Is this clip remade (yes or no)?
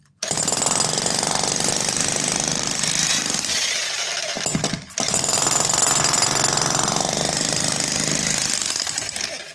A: no